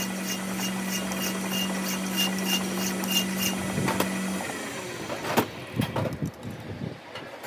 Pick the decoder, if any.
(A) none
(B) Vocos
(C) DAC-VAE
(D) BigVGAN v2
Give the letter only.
A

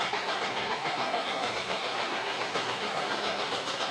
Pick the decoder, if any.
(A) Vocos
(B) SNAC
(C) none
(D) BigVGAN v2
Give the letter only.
B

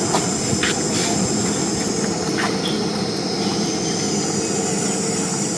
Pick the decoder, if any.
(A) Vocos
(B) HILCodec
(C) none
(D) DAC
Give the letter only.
C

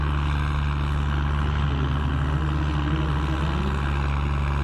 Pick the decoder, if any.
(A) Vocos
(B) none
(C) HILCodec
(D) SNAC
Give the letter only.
B